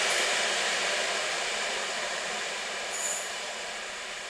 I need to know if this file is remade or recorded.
remade